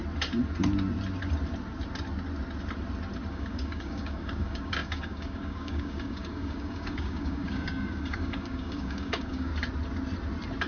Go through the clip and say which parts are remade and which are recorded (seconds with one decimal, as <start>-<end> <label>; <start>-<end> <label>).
0.0-3.3 recorded; 3.3-9.5 remade; 9.5-10.7 recorded